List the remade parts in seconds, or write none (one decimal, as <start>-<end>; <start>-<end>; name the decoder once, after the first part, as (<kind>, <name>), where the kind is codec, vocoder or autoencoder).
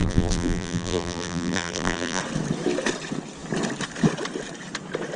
0.0-2.2 (vocoder, BigVGAN v2)